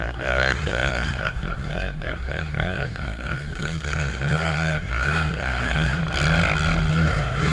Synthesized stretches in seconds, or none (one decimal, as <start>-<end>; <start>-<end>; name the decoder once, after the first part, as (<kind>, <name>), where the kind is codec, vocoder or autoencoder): 0.0-6.0 (codec, SNAC); 6.9-7.5